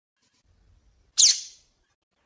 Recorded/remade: recorded